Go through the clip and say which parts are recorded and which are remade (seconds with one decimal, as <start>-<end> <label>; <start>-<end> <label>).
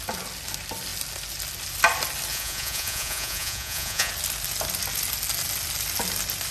0.0-2.3 recorded; 2.3-4.1 remade; 4.1-6.5 recorded